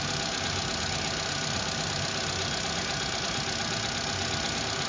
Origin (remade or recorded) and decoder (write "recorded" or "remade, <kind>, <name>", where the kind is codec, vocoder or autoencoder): recorded